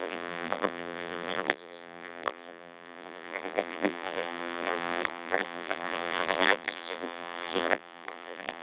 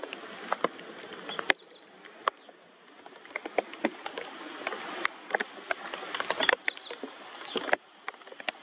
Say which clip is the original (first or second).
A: second